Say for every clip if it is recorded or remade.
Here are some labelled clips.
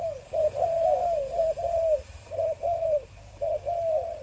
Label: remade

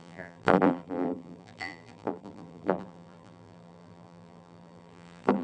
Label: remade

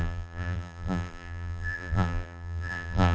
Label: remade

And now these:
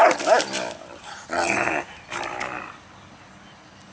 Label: recorded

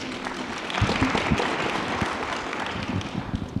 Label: recorded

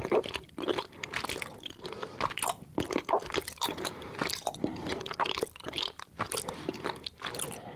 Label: remade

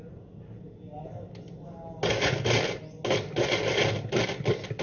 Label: recorded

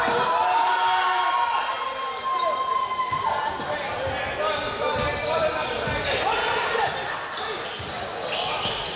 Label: recorded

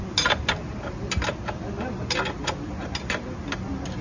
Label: recorded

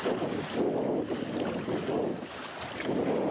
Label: recorded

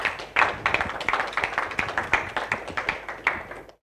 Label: recorded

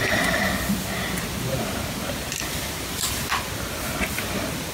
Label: remade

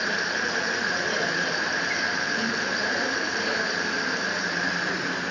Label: remade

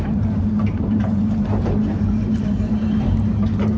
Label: remade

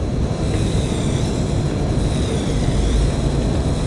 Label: remade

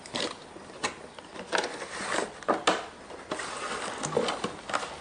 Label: recorded